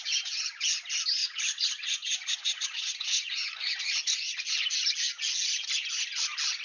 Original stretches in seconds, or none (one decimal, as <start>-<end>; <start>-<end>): 0.0-1.2; 3.7-6.6